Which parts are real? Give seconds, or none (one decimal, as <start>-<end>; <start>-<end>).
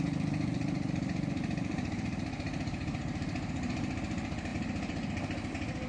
none